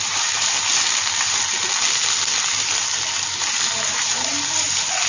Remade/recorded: recorded